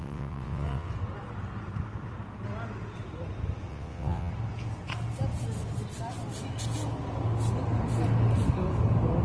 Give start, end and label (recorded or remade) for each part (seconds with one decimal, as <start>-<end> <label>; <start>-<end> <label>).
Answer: 0.0-0.9 remade; 0.9-3.7 recorded; 3.7-4.3 remade; 4.3-9.2 recorded